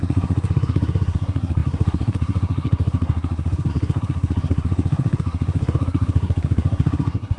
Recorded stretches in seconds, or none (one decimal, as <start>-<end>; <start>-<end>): none